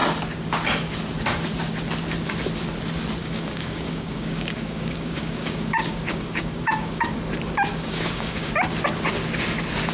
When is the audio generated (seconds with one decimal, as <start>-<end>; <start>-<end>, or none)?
3.2-7.2; 7.7-8.5

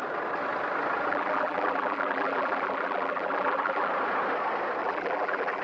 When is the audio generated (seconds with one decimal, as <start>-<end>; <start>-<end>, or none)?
1.1-3.9; 4.8-5.6

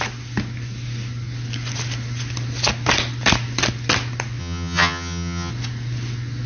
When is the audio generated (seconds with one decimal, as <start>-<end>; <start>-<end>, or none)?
4.4-5.5